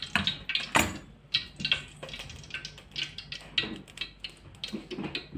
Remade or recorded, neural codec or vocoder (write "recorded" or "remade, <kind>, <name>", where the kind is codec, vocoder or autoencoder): recorded